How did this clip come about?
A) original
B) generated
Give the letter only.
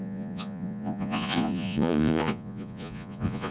B